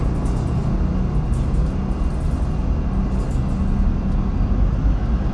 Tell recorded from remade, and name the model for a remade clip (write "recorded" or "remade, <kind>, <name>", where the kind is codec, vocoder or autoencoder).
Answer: recorded